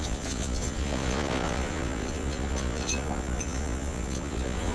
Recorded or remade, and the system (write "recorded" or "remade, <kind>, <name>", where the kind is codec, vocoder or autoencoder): remade, vocoder, Vocos